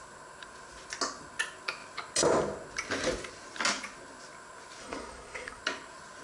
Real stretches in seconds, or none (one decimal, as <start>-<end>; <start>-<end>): 0.0-4.8; 5.6-6.2